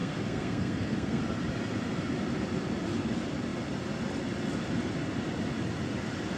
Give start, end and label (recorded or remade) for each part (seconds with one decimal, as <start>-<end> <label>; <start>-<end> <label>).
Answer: 0.0-1.2 remade; 1.2-6.4 recorded